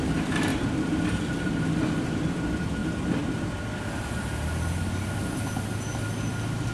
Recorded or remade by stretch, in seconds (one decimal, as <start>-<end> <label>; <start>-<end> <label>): 0.0-6.7 recorded